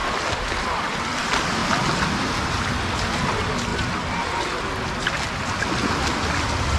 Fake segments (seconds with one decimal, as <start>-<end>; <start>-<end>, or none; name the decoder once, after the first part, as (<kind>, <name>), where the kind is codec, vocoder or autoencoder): none